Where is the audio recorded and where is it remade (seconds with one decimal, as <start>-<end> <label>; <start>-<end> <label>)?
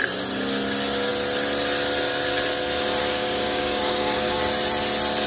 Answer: 0.0-3.0 recorded; 3.0-4.4 remade; 4.4-5.3 recorded